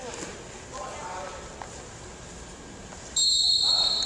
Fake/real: real